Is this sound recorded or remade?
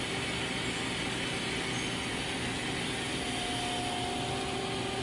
recorded